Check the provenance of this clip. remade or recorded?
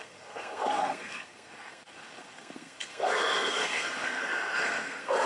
remade